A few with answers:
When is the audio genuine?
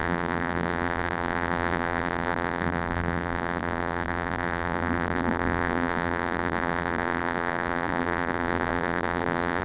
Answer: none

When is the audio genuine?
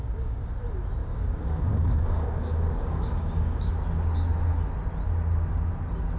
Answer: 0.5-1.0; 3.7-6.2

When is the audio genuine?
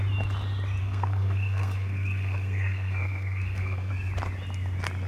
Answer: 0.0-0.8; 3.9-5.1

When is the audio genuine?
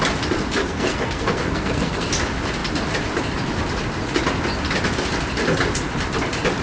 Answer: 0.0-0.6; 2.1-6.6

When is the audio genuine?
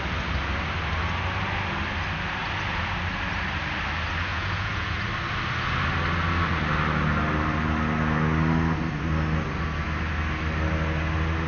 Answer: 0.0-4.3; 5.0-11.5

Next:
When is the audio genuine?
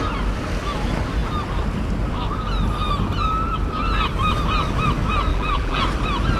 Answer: 0.0-5.3; 5.8-6.4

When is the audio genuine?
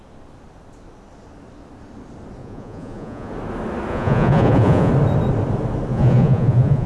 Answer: 0.0-2.4; 3.3-3.9; 4.9-5.9